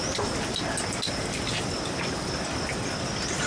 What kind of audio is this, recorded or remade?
recorded